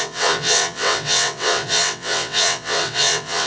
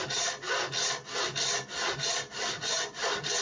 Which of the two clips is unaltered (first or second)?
second